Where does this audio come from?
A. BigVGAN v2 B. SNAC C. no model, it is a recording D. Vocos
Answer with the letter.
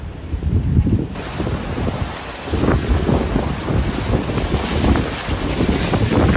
C